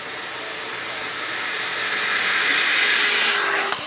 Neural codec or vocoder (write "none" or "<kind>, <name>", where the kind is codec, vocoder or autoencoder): none